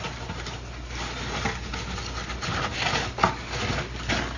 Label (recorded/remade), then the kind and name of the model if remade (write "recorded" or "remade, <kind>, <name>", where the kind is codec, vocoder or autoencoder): recorded